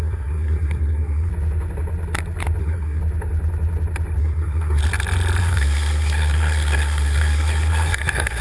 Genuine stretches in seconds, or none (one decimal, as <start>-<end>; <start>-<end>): 1.3-2.6; 3.0-4.2; 4.8-5.4